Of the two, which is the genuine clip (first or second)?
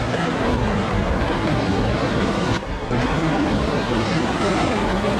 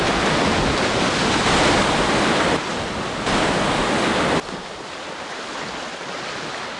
second